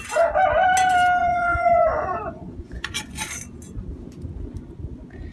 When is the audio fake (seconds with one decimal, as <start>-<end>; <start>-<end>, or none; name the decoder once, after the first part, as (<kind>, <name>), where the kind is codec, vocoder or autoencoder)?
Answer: 1.2-3.3 (vocoder, Vocos)